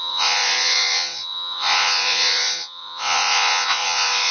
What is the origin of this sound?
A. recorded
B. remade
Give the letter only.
B